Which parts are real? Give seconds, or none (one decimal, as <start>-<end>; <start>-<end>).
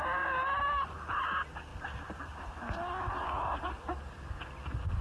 0.0-5.0